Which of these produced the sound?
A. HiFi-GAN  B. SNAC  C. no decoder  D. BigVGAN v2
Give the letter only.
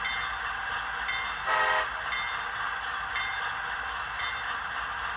C